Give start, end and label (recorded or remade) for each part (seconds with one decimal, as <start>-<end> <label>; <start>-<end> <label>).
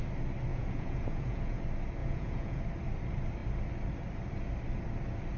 0.0-0.5 recorded; 0.5-1.6 remade; 1.6-2.0 recorded; 2.0-2.6 remade; 2.6-5.4 recorded